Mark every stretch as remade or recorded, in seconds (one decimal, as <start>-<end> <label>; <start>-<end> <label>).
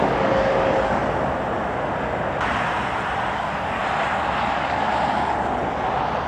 0.0-1.0 remade; 1.0-3.3 recorded; 3.3-3.8 remade; 3.8-4.4 recorded; 4.4-4.9 remade; 4.9-6.3 recorded